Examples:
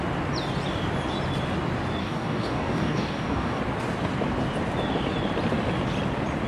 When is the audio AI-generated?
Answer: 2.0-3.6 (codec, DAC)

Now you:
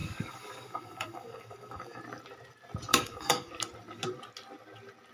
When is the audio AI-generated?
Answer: 0.0-2.0 (codec, DAC); 2.9-3.5

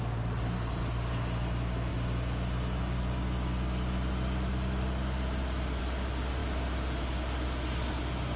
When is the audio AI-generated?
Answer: none

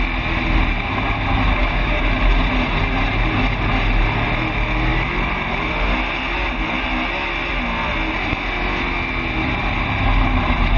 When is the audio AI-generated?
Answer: 1.6-2.1 (codec, DAC)

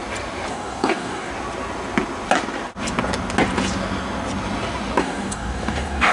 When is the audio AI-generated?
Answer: 0.5-1.3 (codec, DAC); 5.0-6.1

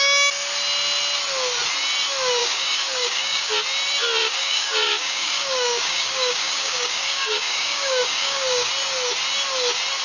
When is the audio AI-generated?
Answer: 2.4-3.5 (codec, DAC); 4.2-8.7